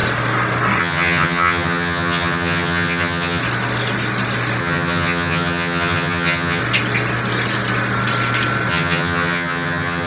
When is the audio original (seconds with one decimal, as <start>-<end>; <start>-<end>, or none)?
0.0-0.8; 3.4-4.6; 6.6-8.7